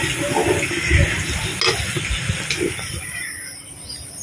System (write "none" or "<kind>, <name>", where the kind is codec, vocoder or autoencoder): none